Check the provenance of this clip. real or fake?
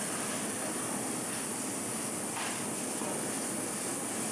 real